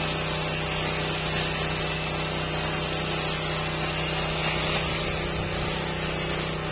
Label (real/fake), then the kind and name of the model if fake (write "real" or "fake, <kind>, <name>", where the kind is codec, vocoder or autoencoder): real